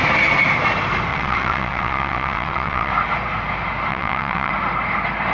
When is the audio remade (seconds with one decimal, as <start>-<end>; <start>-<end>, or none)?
1.1-2.9; 3.9-4.5

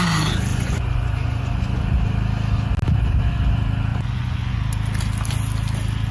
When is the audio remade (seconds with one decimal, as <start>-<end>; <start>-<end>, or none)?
0.5-1.8; 3.9-4.6

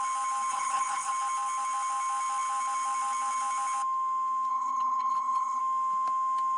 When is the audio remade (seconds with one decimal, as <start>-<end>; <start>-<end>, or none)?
0.5-1.1; 4.5-5.6

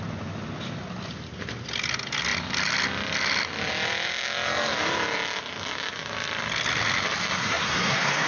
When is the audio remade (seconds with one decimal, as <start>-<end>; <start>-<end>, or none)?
7.4-8.3